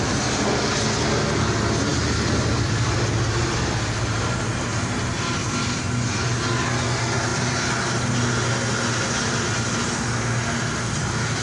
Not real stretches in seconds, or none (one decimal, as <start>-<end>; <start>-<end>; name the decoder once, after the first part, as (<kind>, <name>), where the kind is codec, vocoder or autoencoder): 1.9-3.4 (vocoder, BigVGAN v2)